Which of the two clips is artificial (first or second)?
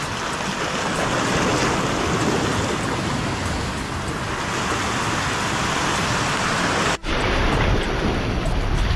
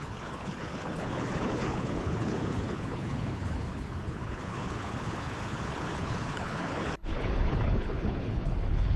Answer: second